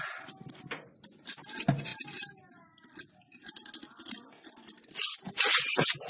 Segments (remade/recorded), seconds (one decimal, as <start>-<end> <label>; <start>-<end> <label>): 0.0-6.1 recorded